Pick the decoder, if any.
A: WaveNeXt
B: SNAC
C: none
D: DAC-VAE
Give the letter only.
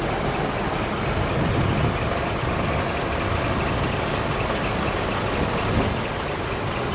C